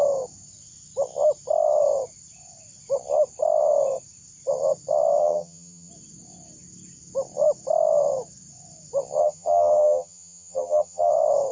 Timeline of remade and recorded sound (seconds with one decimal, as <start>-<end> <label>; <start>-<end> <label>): 0.0-5.2 recorded; 5.2-5.9 remade; 5.9-9.2 recorded; 9.2-11.1 remade; 11.1-11.5 recorded